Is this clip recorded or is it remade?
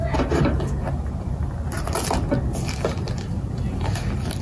recorded